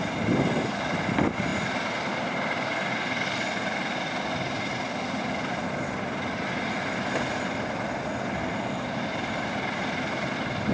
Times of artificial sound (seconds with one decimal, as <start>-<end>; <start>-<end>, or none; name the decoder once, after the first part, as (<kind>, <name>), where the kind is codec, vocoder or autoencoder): none